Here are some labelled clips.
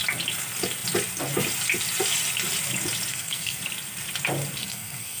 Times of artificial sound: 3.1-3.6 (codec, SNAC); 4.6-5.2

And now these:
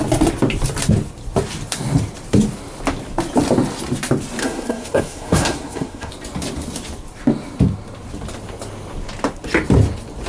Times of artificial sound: 4.4-6.1 (codec, SNAC)

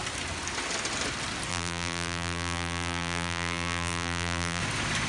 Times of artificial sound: 1.5-4.6 (vocoder, BigVGAN v2)